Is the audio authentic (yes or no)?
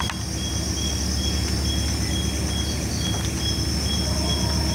yes